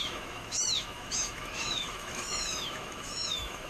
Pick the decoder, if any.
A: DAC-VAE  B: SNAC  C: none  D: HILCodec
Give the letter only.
A